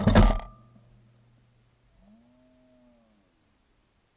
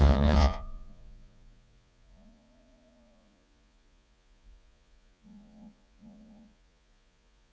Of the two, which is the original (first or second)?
first